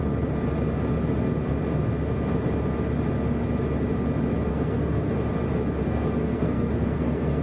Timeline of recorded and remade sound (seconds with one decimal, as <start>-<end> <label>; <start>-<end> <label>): 0.0-4.5 recorded; 4.5-5.1 remade; 5.1-5.8 recorded; 5.8-7.4 remade